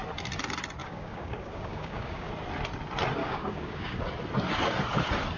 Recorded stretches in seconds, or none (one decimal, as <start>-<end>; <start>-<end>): 0.0-0.8; 2.3-3.2; 4.0-5.4